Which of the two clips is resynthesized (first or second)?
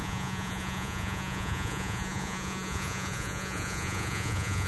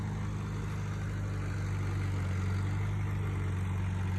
first